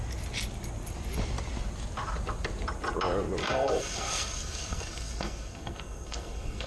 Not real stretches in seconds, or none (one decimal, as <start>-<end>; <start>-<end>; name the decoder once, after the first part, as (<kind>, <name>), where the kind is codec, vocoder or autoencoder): 3.4-6.7 (codec, SNAC)